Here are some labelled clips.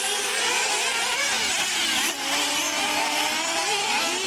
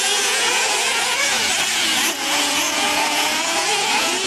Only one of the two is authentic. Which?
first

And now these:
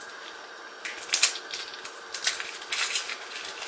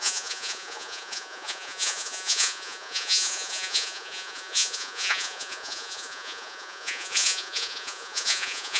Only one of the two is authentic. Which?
first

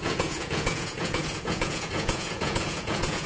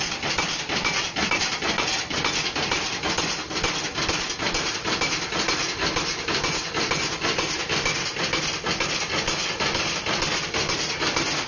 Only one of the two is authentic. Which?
second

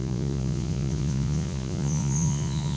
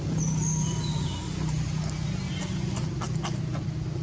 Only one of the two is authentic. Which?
second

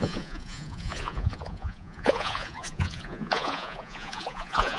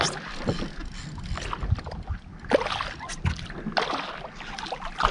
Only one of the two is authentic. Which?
second